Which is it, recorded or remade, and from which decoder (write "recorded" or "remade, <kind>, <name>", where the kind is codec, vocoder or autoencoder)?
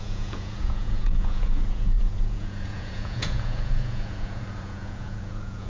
remade, vocoder, Vocos